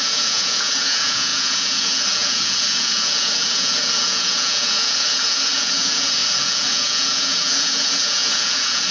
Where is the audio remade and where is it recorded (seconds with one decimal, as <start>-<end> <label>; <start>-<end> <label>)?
0.0-8.9 remade